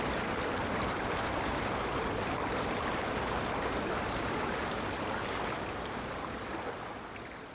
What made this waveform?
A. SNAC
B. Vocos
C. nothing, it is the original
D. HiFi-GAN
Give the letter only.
C